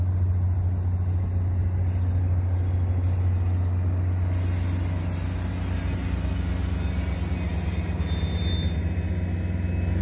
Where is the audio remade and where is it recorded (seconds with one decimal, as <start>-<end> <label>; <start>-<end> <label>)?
0.0-10.0 recorded